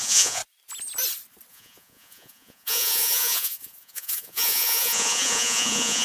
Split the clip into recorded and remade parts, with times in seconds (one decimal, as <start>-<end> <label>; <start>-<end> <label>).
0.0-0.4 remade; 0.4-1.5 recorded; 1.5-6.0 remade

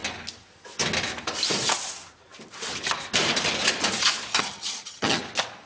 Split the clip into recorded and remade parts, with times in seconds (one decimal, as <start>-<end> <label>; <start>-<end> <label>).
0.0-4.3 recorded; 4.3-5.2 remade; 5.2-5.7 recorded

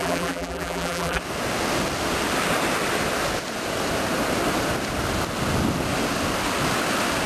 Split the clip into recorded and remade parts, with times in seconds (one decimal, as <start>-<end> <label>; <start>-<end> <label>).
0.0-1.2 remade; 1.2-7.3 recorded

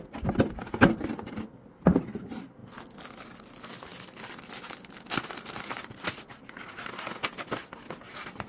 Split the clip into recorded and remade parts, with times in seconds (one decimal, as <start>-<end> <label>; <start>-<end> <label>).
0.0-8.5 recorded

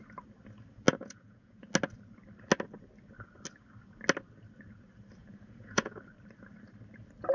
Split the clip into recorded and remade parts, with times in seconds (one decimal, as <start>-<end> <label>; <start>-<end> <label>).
0.0-0.9 recorded; 0.9-1.6 remade; 1.6-5.2 recorded; 5.2-5.9 remade; 5.9-7.3 recorded

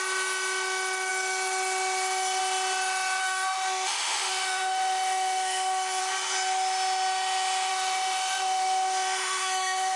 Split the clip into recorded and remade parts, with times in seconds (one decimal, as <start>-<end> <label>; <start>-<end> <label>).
0.0-3.2 recorded; 3.2-6.0 remade; 6.0-7.7 recorded; 7.7-10.0 remade